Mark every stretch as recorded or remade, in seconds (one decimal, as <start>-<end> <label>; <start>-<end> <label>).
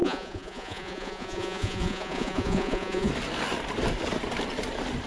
0.0-3.1 remade; 3.1-5.1 recorded